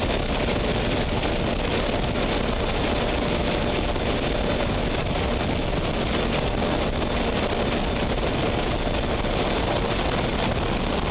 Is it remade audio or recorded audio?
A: recorded